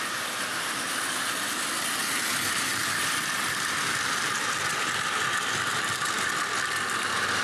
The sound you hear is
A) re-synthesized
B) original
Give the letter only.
B